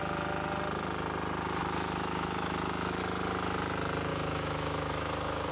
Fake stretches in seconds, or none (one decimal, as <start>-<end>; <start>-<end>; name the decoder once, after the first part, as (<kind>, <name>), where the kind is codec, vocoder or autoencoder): 1.6-3.0 (autoencoder, DAC-VAE); 4.1-5.5